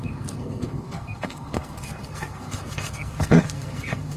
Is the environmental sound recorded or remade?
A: remade